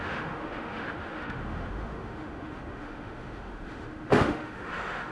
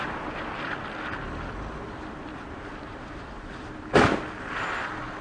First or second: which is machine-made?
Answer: first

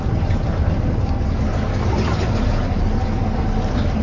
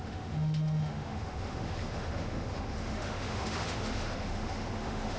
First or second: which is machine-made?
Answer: second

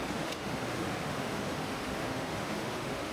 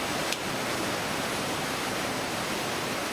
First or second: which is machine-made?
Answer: first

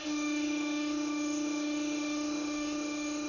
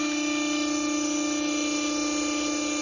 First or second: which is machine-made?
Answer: first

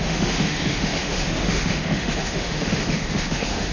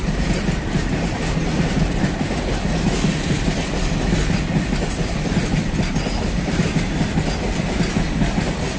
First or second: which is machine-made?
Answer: first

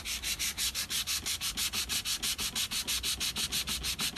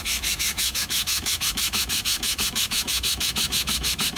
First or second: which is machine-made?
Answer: second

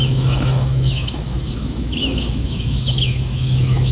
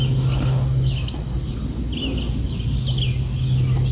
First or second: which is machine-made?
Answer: first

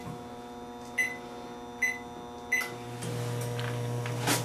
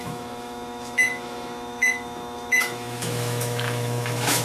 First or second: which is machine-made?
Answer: second